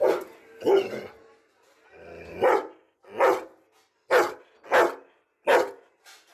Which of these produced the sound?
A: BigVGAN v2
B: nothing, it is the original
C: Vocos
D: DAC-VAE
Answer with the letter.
B